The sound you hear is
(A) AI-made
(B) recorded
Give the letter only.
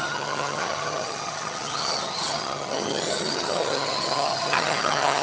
A